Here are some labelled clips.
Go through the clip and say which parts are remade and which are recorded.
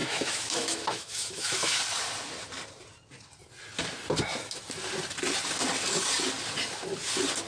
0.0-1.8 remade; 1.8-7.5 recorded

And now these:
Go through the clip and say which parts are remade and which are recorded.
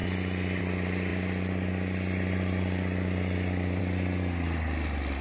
0.0-5.2 recorded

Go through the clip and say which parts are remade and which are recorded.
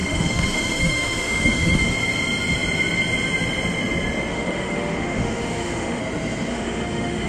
0.0-1.8 remade; 1.8-4.3 recorded; 4.3-6.0 remade; 6.0-6.5 recorded; 6.5-7.3 remade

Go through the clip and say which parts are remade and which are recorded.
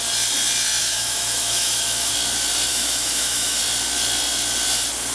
0.0-0.8 recorded; 0.8-2.1 remade; 2.1-2.7 recorded; 2.7-3.6 remade; 3.6-5.1 recorded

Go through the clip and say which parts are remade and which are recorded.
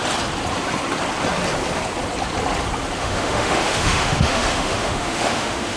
0.0-3.0 recorded; 3.0-5.8 remade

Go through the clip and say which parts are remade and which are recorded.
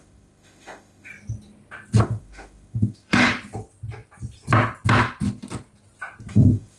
0.0-1.1 remade; 1.1-2.0 recorded; 2.0-3.3 remade; 3.3-6.3 recorded; 6.3-6.8 remade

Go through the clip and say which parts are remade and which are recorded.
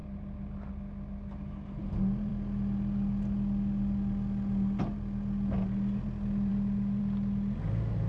0.0-8.1 recorded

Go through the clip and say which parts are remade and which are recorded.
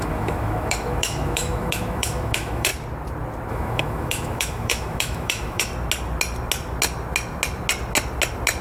0.0-2.7 remade; 2.7-3.5 recorded; 3.5-5.7 remade; 5.7-8.6 recorded